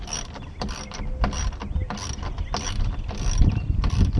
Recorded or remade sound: recorded